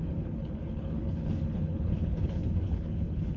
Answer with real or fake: fake